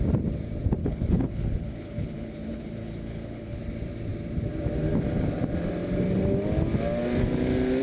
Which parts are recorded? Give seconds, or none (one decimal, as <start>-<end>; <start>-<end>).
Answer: 0.0-0.8; 3.6-7.8